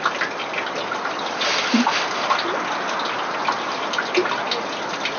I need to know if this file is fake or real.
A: real